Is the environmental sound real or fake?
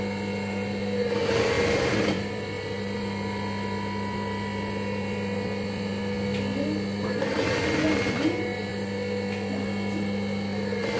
real